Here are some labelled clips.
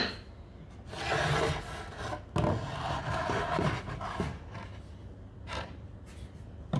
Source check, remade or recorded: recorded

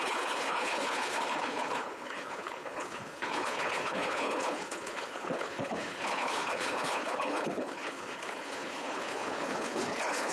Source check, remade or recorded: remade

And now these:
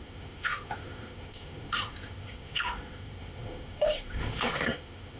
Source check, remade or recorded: remade